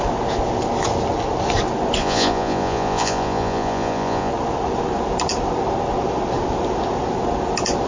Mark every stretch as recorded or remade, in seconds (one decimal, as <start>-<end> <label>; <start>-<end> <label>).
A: 0.0-2.0 recorded; 2.0-4.3 remade; 4.3-7.9 recorded